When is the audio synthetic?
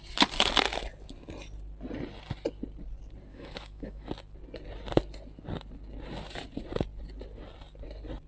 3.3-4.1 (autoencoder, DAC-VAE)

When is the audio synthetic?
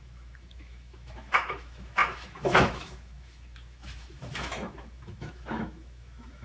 0.0-6.4 (autoencoder, DAC-VAE)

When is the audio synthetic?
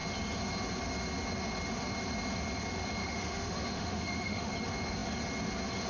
3.0-4.5 (autoencoder, DAC-VAE)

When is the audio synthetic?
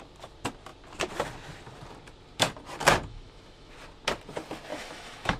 3.1-3.7 (autoencoder, DAC-VAE); 4.7-5.4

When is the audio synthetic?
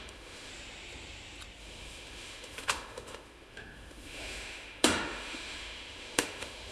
0.0-0.5 (autoencoder, DAC-VAE); 1.6-6.7